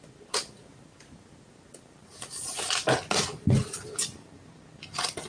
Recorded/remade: recorded